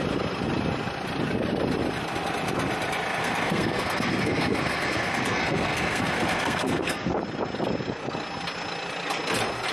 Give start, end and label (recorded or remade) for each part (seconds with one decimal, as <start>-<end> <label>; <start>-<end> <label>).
0.0-3.2 recorded; 3.2-7.2 remade; 7.2-9.7 recorded